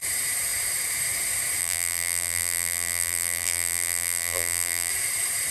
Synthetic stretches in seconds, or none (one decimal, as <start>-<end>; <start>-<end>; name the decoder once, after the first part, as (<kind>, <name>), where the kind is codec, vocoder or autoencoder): 1.6-4.9 (vocoder, BigVGAN v2)